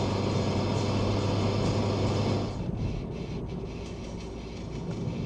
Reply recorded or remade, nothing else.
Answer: recorded